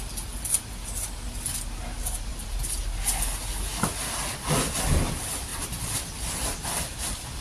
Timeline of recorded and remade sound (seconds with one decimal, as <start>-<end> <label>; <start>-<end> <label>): 0.0-7.4 recorded